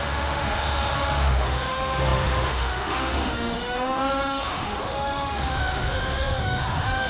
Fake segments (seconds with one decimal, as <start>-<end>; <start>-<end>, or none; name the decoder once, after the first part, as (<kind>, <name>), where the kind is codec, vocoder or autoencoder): 0.0-7.1 (autoencoder, DAC-VAE)